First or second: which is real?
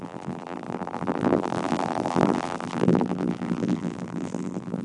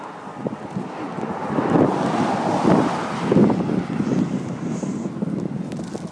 second